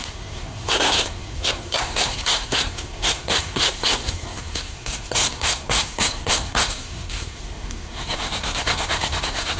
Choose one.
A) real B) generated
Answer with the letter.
B